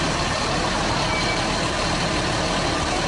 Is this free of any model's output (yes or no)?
yes